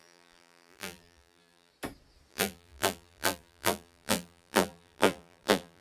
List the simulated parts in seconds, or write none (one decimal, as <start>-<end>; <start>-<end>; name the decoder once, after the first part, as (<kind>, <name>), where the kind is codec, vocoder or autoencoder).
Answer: 0.0-1.7 (vocoder, BigVGAN v2); 2.3-5.8